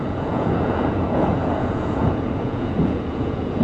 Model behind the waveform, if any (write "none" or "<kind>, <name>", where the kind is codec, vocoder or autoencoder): vocoder, Vocos